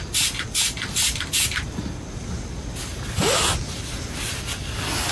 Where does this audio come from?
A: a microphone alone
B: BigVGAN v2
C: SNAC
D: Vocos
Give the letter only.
A